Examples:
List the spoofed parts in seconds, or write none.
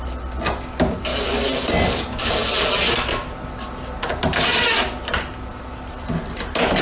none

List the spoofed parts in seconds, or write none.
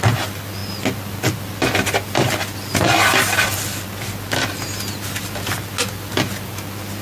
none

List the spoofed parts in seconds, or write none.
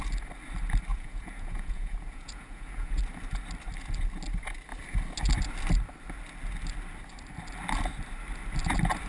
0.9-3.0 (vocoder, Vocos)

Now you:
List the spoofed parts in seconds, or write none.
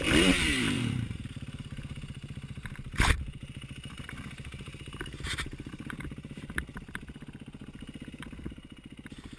0.0-6.7 (vocoder, BigVGAN v2); 8.1-9.4